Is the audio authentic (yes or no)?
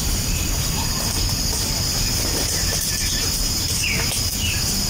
no